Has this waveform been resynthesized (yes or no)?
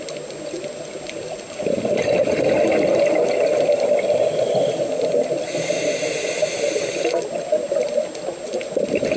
no